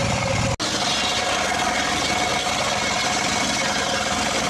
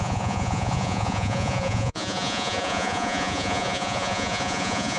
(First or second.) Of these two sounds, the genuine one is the first